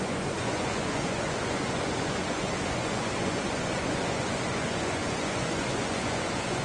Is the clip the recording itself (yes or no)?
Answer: no